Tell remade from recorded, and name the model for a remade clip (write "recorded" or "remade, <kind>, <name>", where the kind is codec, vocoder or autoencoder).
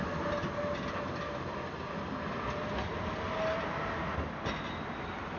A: recorded